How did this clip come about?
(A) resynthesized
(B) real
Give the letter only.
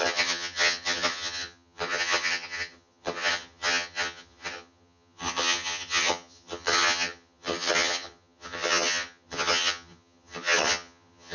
A